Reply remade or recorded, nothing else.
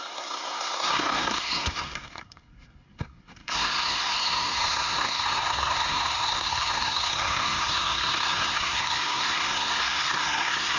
remade